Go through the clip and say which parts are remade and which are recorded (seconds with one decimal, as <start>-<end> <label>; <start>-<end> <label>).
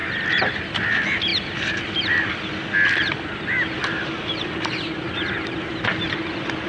0.0-6.7 recorded